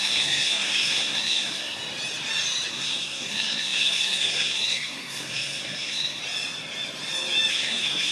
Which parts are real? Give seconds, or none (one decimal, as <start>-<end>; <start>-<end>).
1.8-2.7; 6.2-7.5